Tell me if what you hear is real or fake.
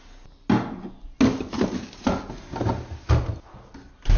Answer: real